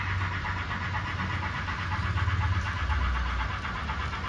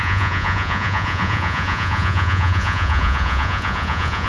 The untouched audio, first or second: first